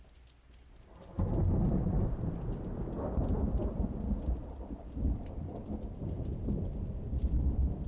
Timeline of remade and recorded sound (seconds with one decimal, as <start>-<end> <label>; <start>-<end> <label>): 0.0-7.9 recorded